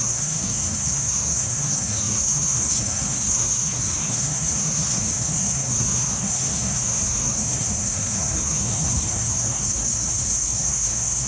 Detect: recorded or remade remade